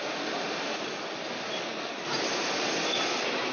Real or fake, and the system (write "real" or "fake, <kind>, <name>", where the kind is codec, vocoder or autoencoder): real